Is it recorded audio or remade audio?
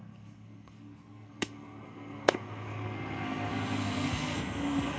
remade